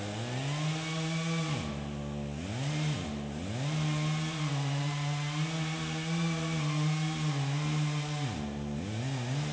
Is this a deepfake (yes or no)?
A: no